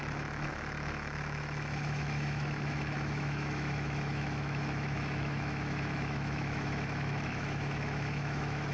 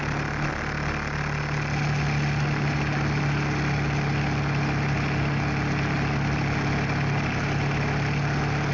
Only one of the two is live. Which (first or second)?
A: second